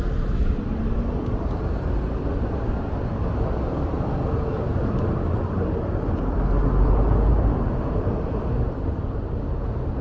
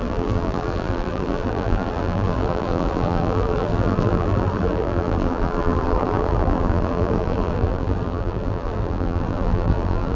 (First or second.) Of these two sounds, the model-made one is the second